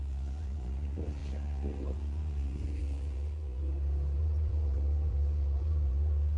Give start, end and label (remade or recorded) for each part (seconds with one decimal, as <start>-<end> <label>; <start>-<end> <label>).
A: 0.0-3.6 remade; 3.6-4.2 recorded; 4.2-6.4 remade